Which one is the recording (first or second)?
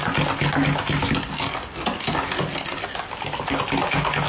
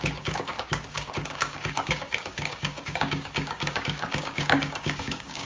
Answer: first